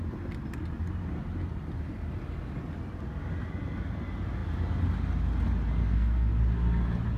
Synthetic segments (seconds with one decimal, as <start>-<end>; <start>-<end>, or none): 5.8-6.3